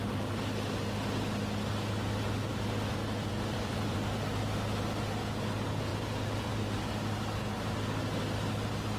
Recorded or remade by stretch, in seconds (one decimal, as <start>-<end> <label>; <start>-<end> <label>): 0.0-3.0 recorded; 3.0-4.4 remade; 4.4-5.9 recorded; 5.9-6.8 remade; 6.8-9.0 recorded